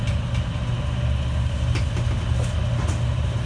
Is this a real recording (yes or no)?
yes